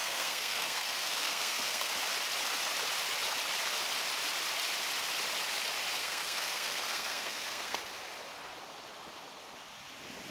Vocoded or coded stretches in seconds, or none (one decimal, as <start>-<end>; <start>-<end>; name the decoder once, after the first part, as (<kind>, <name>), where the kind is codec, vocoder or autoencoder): 0.0-1.9 (codec, SNAC); 6.0-7.8